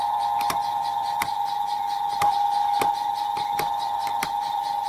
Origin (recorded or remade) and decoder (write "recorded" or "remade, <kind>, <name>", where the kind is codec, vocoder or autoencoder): remade, vocoder, BigVGAN v2